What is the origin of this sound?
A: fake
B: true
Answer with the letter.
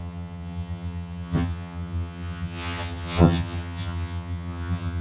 A